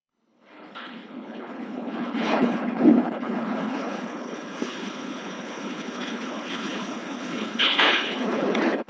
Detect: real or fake fake